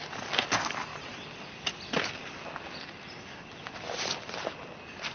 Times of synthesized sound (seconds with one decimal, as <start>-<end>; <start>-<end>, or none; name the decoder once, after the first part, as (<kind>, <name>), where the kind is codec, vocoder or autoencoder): none